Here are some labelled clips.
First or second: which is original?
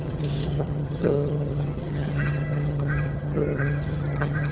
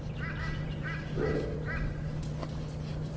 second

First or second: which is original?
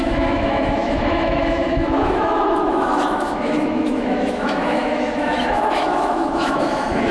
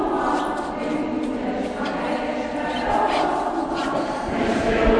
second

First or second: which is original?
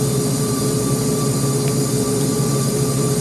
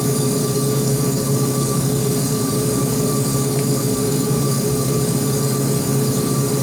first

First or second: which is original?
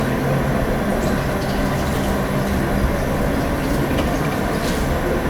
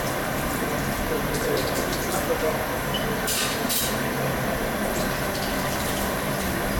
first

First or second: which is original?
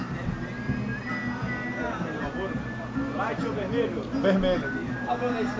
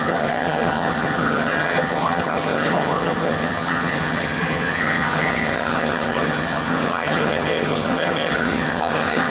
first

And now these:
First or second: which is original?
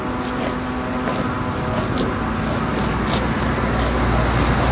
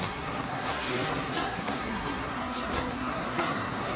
first